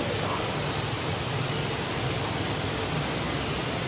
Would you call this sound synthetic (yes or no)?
no